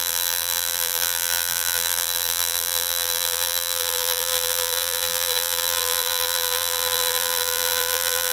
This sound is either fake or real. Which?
fake